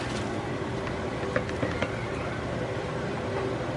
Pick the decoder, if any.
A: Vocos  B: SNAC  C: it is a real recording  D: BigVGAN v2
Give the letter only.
C